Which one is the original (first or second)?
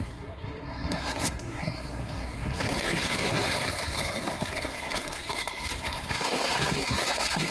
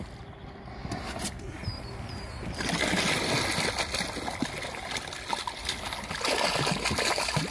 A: second